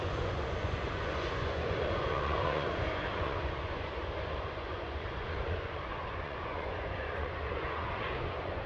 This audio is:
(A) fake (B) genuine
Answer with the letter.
A